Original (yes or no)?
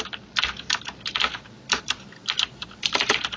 yes